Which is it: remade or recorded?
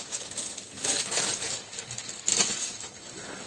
remade